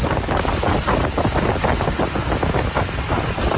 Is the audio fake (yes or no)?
no